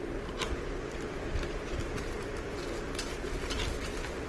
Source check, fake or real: real